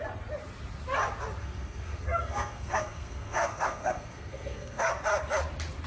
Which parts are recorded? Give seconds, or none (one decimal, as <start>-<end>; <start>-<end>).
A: 0.0-1.4; 4.9-5.9